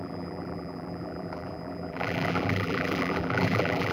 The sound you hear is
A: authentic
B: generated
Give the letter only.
B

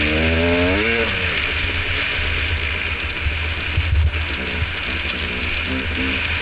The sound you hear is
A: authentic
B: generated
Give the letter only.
A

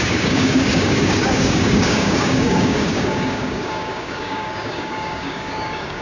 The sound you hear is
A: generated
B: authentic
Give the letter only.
A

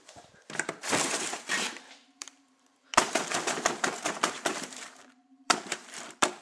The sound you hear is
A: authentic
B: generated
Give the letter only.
B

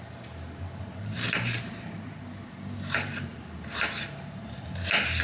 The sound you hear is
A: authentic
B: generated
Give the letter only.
B